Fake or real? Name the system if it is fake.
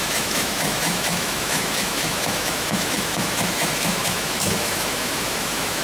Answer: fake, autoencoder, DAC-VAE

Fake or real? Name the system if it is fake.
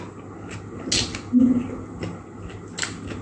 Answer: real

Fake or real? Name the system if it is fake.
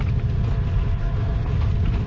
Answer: real